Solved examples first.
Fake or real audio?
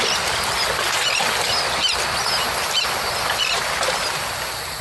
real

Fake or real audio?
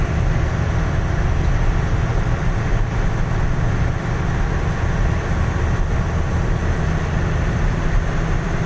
real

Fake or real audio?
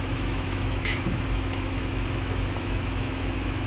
fake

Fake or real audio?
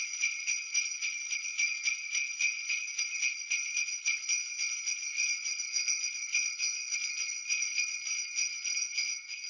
real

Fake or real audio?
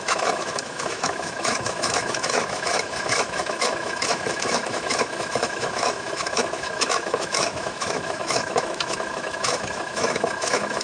fake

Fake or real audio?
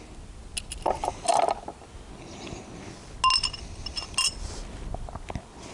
real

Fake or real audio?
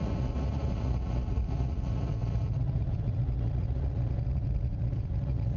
fake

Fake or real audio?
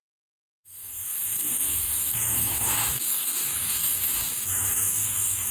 fake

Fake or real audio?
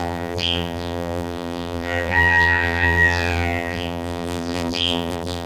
fake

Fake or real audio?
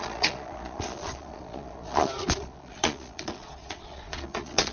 fake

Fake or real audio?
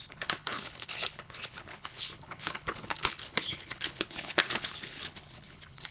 fake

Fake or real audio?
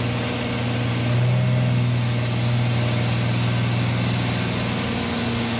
real